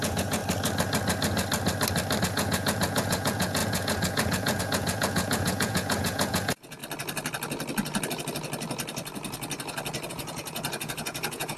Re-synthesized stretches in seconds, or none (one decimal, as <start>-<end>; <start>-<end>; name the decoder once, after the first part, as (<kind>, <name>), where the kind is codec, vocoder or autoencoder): 0.0-0.4 (vocoder, Vocos); 2.2-6.8; 10.1-11.6